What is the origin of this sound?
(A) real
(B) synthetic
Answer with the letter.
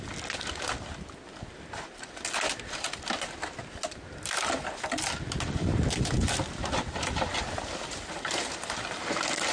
A